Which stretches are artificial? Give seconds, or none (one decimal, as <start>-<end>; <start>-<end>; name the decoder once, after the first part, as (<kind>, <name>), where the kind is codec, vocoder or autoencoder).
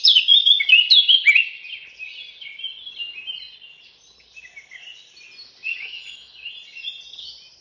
5.7-6.5 (autoencoder, DAC-VAE)